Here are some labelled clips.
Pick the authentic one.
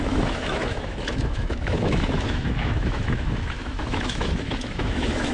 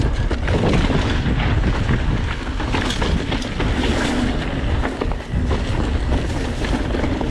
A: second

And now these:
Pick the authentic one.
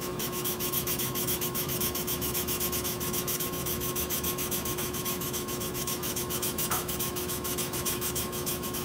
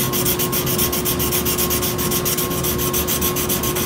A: second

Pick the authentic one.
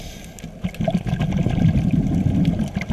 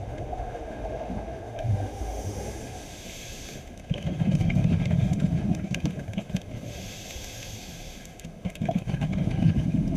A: first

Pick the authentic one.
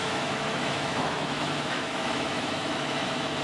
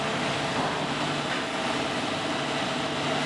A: second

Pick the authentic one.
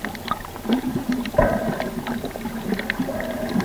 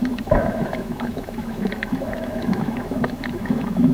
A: first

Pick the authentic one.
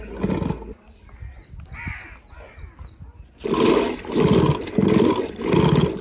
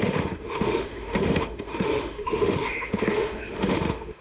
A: first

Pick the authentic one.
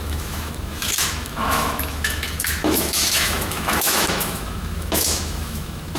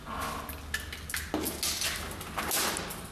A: second